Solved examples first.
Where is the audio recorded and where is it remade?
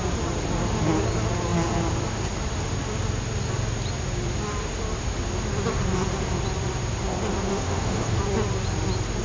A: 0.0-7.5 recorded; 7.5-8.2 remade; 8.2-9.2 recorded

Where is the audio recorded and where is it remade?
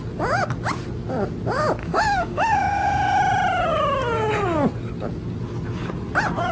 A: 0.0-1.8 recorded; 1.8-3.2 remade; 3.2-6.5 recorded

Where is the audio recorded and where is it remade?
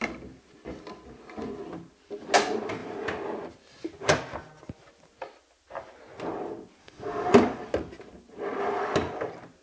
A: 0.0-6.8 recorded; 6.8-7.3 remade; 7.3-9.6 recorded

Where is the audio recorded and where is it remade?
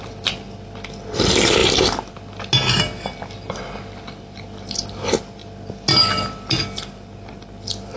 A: 0.0-8.0 recorded